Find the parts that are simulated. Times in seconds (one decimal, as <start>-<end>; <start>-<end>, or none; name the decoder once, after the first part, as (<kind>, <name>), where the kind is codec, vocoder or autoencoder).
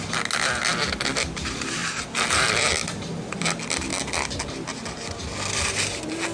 1.8-3.4 (vocoder, BigVGAN v2); 3.9-4.5